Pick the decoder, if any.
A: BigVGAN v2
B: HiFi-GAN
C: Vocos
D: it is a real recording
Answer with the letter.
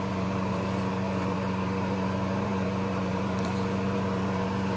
A